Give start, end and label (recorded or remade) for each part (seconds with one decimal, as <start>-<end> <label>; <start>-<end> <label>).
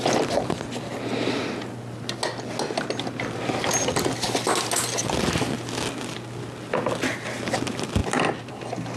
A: 0.0-9.0 recorded